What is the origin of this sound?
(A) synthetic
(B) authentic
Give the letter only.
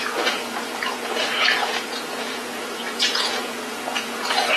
A